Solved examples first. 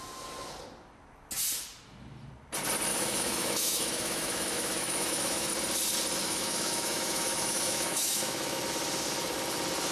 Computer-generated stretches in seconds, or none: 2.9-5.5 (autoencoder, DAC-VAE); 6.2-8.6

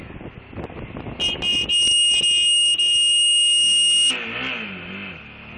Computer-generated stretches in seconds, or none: none

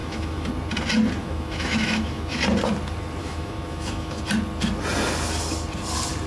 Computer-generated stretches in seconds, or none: 0.0-0.5 (autoencoder, DAC-VAE); 1.2-2.4; 3.2-4.2

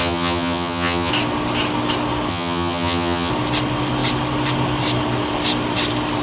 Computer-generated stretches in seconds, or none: 0.0-1.1 (vocoder, HiFi-GAN); 2.3-3.3

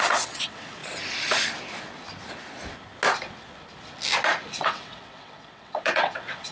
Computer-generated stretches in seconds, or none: 0.0-0.8 (vocoder, WaveNeXt); 4.5-6.5

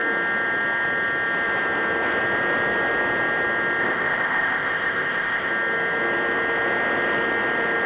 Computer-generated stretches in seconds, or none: 3.8-5.5 (codec, ZipCodec)

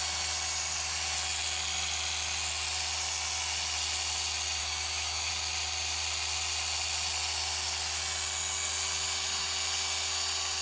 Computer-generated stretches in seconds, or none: 4.6-5.3 (autoencoder, DAC-VAE)